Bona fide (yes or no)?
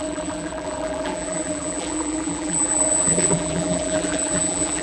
no